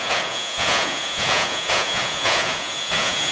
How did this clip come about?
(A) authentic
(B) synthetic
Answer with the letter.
B